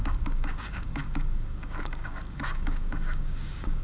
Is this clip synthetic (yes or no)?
yes